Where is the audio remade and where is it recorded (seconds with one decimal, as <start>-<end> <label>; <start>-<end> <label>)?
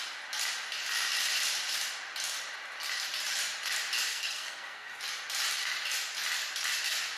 0.0-4.1 recorded; 4.1-5.0 remade; 5.0-7.2 recorded